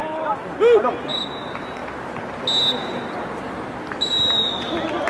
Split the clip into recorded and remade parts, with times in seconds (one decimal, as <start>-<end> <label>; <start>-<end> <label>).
0.0-5.1 recorded